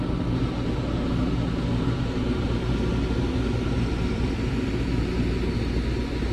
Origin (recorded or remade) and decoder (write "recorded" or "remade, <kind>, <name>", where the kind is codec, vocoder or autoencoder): recorded